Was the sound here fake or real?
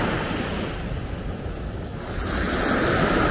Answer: real